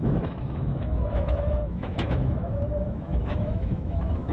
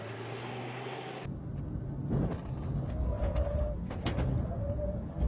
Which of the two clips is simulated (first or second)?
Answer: first